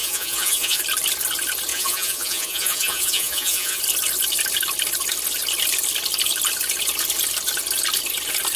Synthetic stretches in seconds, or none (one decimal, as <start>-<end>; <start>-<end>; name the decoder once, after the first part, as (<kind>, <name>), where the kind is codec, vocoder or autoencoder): 0.0-0.8 (vocoder, Vocos); 1.7-3.8